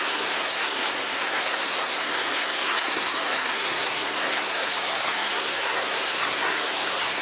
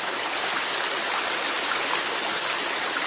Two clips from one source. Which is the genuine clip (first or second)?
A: second